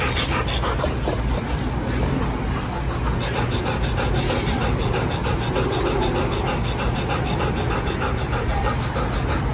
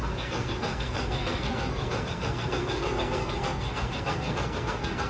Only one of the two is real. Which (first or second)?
first